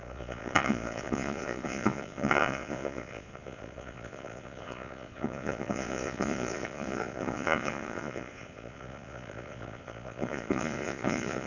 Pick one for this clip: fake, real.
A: fake